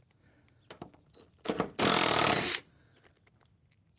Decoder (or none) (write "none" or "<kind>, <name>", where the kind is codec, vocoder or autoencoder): none